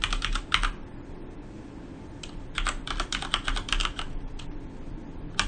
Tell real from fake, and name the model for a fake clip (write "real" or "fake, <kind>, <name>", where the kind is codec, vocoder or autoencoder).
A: real